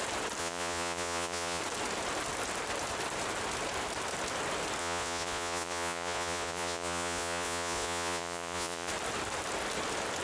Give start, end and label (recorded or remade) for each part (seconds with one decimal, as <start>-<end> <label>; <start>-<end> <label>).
0.0-0.4 recorded; 0.4-1.6 remade; 1.6-4.8 recorded; 4.8-8.9 remade; 8.9-10.2 recorded